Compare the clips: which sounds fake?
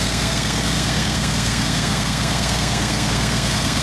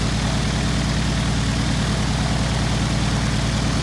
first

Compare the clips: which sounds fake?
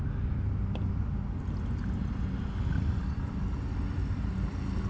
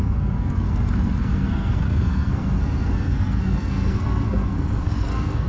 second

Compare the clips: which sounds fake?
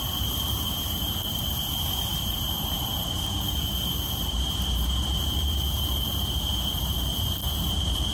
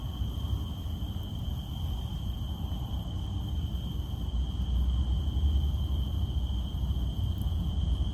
first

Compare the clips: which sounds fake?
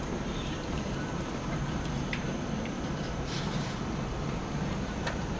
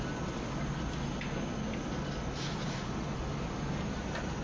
first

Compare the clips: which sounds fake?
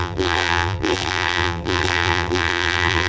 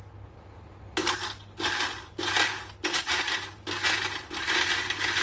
first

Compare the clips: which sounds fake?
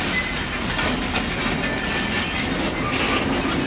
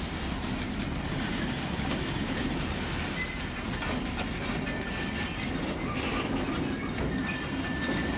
second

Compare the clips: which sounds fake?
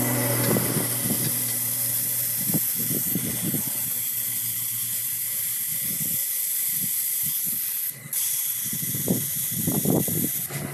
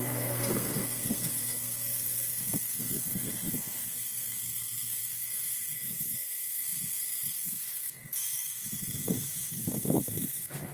second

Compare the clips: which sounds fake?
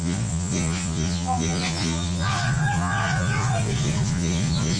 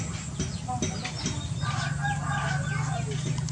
first